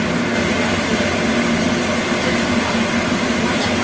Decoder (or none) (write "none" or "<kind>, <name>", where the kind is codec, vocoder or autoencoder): none